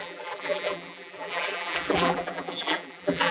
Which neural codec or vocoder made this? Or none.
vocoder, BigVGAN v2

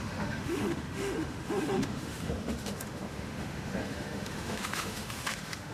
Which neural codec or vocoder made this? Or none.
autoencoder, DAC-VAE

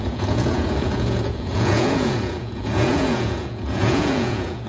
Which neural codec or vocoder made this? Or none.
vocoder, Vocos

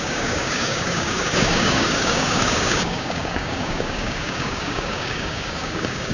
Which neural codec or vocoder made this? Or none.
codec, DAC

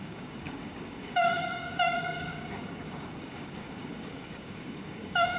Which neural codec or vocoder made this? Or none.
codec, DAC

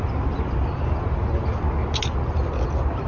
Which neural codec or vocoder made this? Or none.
none